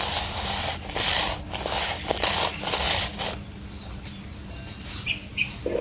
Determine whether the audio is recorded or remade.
recorded